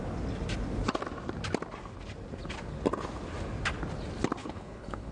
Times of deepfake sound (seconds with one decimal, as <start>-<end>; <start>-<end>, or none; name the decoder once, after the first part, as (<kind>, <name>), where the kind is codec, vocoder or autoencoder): 4.4-5.1 (codec, HILCodec)